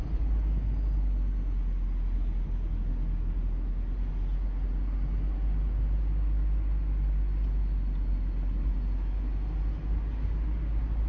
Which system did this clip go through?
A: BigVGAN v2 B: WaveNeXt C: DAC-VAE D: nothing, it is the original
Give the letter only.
D